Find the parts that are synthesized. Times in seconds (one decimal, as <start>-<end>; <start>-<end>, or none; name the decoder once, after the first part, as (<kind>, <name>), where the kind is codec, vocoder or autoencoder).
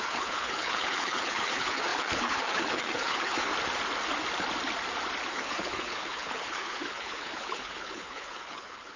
0.0-3.5 (codec, HILCodec); 5.3-9.0